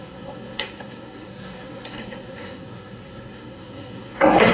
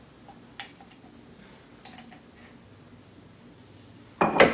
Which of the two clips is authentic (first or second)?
second